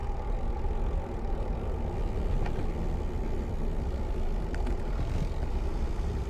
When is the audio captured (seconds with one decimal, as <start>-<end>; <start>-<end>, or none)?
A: 0.0-6.3